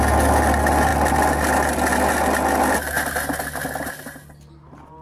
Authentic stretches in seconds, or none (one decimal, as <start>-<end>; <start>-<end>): 0.0-5.0